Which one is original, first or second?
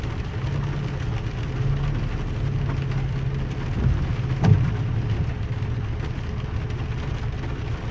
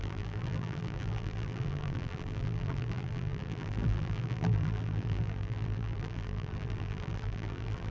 first